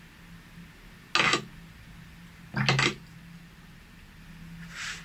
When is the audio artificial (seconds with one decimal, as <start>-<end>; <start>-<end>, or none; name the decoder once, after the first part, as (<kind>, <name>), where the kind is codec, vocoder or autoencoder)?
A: 2.9-4.2 (vocoder, BigVGAN v2)